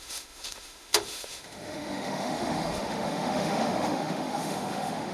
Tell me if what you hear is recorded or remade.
remade